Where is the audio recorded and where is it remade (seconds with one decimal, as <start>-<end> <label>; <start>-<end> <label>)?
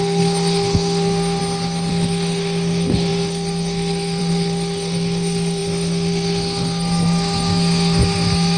0.0-1.4 remade; 1.4-1.9 recorded; 1.9-8.6 remade